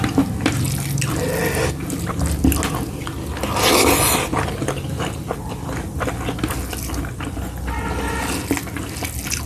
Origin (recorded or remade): recorded